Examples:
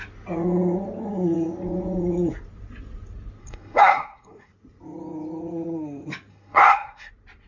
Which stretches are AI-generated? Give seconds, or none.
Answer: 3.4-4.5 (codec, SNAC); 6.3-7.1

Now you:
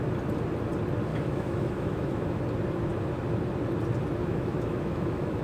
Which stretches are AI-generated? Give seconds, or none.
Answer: 1.1-2.4 (autoencoder, DAC-VAE); 4.2-5.4

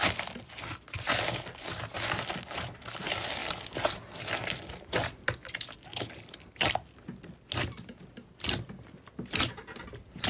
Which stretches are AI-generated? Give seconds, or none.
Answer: none

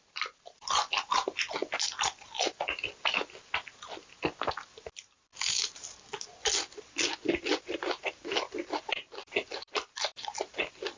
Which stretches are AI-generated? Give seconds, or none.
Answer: 7.5-10.6 (vocoder, BigVGAN v2)